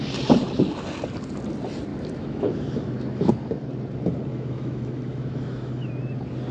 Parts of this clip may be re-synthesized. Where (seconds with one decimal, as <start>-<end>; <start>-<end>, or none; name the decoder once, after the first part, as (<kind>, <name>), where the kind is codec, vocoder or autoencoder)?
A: 1.9-3.3 (autoencoder, DAC-VAE); 4.3-5.9